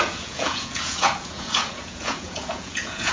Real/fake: fake